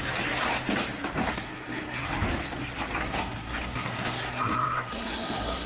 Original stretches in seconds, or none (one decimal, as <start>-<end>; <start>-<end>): 0.0-1.3; 2.0-3.0